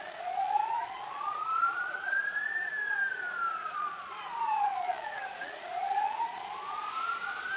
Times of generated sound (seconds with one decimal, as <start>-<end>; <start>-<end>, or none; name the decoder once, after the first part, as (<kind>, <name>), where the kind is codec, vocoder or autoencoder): 0.0-2.7 (vocoder, Vocos); 3.5-7.6